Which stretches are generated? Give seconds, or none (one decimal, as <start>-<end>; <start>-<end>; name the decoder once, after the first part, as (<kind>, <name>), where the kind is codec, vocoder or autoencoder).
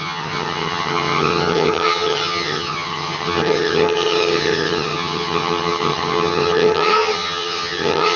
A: 0.0-8.2 (vocoder, HiFi-GAN)